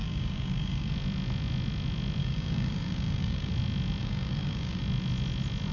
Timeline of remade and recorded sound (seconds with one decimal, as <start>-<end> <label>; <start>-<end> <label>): 0.0-0.9 remade; 0.9-2.2 recorded; 2.2-3.5 remade; 3.5-4.0 recorded; 4.0-4.8 remade; 4.8-5.7 recorded